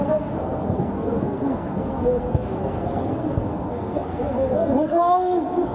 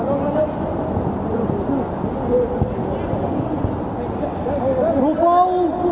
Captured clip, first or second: second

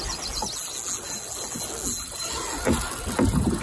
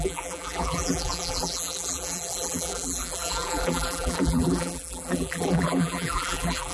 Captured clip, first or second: first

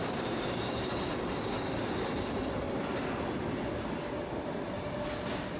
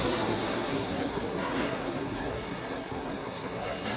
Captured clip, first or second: first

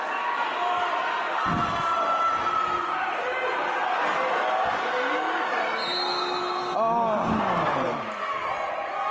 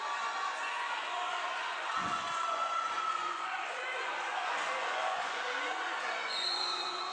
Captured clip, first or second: first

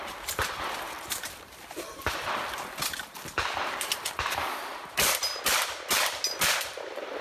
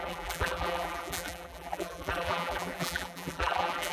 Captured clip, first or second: first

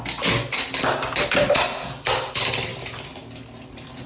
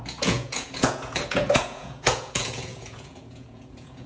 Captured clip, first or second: first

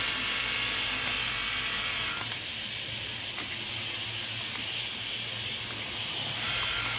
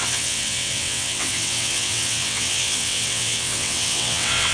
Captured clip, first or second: first